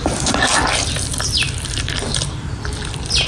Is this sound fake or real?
real